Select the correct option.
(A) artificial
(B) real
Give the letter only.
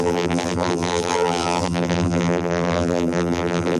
A